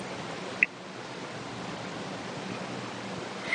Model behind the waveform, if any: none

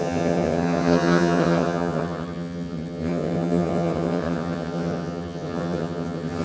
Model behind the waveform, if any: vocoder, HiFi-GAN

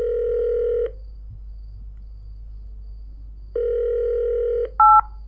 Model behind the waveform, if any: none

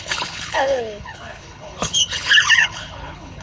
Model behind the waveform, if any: codec, HILCodec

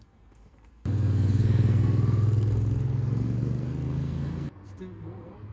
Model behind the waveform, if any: codec, SNAC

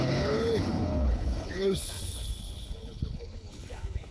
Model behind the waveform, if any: codec, HILCodec